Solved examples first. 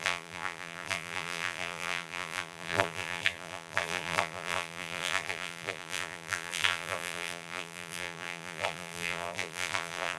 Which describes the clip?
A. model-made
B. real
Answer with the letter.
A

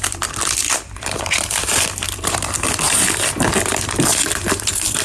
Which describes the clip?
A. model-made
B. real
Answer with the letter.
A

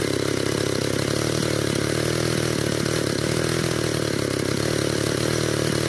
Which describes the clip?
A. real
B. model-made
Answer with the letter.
A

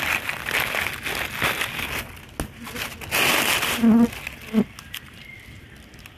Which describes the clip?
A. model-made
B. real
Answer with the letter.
B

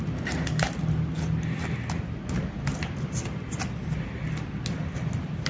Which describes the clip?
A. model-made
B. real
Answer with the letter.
B